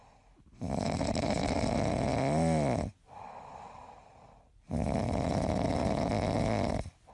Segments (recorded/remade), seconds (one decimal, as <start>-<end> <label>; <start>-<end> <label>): 0.0-4.3 recorded; 4.3-5.8 remade; 5.8-7.1 recorded